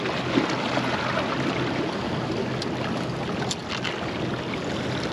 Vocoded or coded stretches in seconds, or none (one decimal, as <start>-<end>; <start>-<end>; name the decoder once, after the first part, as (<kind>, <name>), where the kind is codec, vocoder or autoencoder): none